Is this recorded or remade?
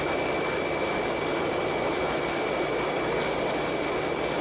recorded